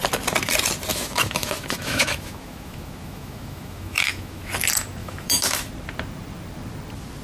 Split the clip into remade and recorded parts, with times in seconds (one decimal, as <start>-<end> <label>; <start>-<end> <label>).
0.0-0.9 recorded; 0.9-4.5 remade; 4.5-5.0 recorded; 5.0-5.7 remade; 5.7-7.2 recorded

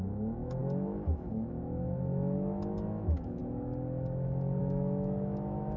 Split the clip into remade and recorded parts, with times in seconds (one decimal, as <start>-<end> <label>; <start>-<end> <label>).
0.0-3.4 remade; 3.4-4.6 recorded; 4.6-5.8 remade

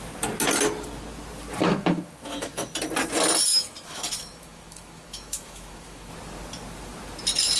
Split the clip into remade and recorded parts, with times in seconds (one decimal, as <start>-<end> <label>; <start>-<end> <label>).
0.0-1.6 recorded; 1.6-2.7 remade; 2.7-3.5 recorded; 3.5-6.1 remade; 6.1-7.6 recorded

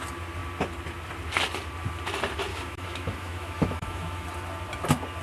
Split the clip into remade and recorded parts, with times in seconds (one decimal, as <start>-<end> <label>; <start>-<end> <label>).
0.0-2.5 recorded; 2.5-4.3 remade; 4.3-5.2 recorded